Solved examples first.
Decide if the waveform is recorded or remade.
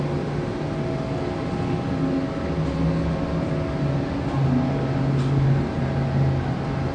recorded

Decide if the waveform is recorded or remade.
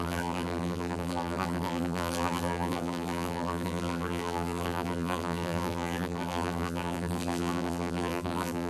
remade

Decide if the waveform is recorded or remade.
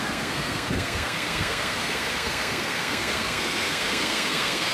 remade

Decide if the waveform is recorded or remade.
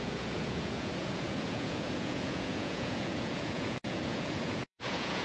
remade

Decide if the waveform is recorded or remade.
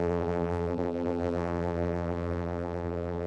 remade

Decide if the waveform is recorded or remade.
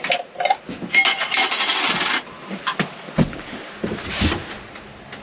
recorded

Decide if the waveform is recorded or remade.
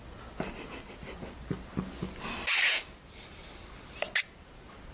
recorded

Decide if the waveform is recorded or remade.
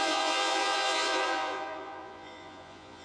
remade